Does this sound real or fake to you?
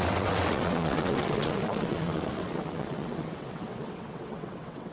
fake